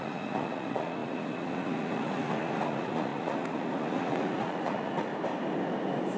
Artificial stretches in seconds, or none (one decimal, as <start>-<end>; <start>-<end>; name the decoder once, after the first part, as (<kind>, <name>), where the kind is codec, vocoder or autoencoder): 0.0-5.1 (vocoder, Vocos)